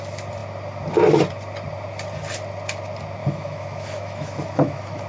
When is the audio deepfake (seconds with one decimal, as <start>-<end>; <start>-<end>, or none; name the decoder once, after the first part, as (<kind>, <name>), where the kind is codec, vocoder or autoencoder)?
3.2-5.1 (autoencoder, DAC-VAE)